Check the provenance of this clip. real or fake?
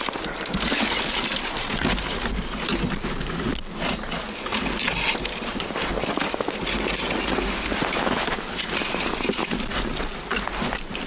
real